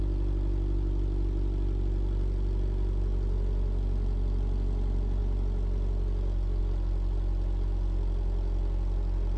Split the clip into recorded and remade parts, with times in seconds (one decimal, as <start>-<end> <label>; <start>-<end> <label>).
0.0-9.4 recorded